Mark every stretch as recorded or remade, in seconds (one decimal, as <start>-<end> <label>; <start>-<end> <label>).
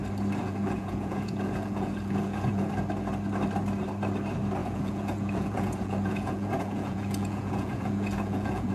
0.0-0.4 recorded; 0.4-2.7 remade; 2.7-4.6 recorded; 4.6-8.7 remade